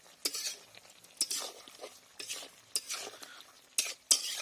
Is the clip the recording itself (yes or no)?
yes